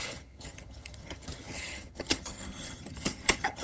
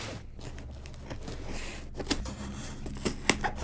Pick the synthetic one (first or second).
first